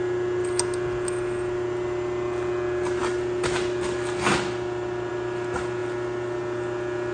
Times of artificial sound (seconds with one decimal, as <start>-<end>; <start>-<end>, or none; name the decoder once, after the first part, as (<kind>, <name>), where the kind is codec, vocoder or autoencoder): none